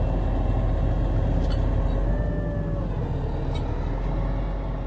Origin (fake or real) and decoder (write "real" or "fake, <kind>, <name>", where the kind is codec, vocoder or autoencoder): real